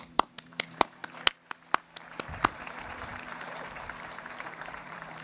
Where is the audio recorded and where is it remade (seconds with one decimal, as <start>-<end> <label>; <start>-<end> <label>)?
0.0-1.0 remade; 1.0-2.5 recorded; 2.5-5.2 remade